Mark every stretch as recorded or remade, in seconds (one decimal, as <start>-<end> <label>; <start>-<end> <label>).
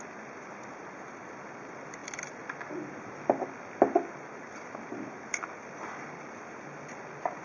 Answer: 0.0-7.4 recorded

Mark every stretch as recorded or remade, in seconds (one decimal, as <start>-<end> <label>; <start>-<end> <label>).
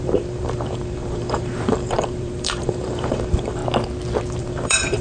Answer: 0.0-3.6 remade; 3.6-4.4 recorded; 4.4-5.0 remade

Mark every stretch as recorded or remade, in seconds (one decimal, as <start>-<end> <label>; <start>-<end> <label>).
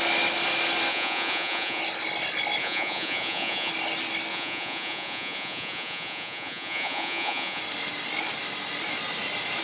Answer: 0.0-0.9 recorded; 0.9-1.8 remade; 1.8-2.6 recorded; 2.6-3.7 remade; 3.7-4.3 recorded; 4.3-7.6 remade; 7.6-9.6 recorded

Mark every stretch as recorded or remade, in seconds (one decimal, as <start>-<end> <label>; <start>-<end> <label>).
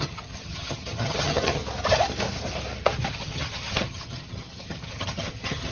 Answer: 0.0-1.6 remade; 1.6-3.1 recorded; 3.1-5.7 remade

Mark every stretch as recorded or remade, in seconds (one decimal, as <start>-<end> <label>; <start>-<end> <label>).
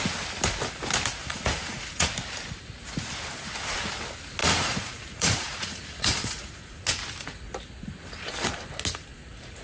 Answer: 0.0-1.2 recorded; 1.2-2.1 remade; 2.1-4.4 recorded; 4.4-6.8 remade; 6.8-9.6 recorded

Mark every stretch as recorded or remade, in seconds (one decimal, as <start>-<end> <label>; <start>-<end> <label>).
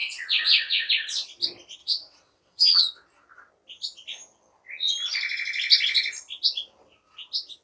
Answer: 0.0-0.9 remade; 0.9-1.8 recorded; 1.8-2.8 remade; 2.8-7.6 recorded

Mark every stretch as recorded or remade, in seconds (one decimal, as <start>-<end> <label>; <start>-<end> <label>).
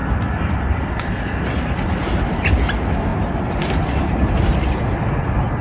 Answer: 0.0-2.5 remade; 2.5-3.1 recorded; 3.1-4.8 remade; 4.8-5.6 recorded